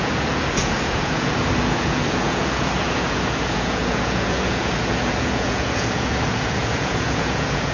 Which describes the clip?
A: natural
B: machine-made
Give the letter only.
B